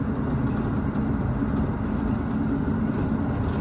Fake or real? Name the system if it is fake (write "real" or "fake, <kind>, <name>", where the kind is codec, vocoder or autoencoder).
real